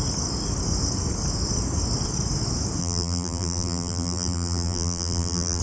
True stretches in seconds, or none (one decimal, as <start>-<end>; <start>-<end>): 0.0-2.8